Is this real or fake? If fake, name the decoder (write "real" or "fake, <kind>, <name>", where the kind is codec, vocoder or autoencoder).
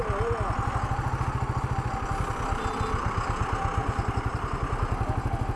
real